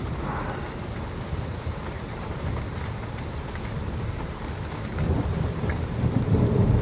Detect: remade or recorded remade